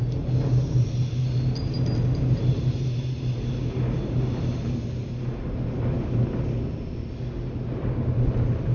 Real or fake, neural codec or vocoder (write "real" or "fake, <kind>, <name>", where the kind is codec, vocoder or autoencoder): real